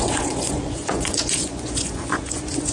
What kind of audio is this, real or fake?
fake